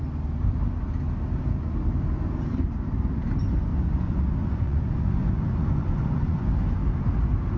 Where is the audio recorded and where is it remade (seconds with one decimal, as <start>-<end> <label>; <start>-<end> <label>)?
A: 0.0-3.7 recorded; 3.7-6.7 remade; 6.7-7.6 recorded